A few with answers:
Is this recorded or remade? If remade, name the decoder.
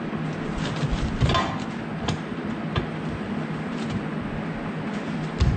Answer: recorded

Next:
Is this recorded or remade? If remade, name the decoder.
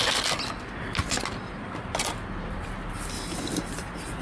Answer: recorded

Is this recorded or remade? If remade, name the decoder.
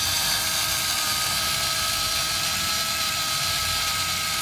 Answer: recorded